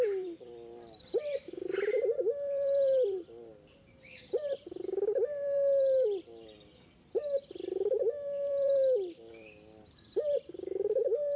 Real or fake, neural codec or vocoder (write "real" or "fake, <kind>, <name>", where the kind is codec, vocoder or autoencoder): fake, vocoder, BigVGAN v2